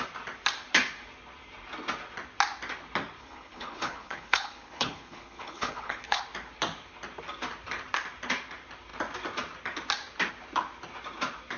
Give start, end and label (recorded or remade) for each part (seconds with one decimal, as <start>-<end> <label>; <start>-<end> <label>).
0.0-3.2 recorded; 3.2-6.2 remade; 6.2-11.6 recorded